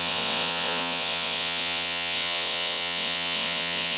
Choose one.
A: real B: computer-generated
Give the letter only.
B